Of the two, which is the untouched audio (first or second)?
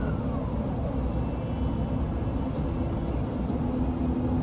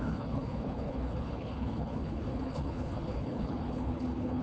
first